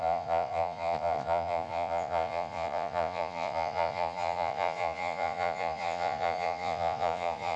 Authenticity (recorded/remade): remade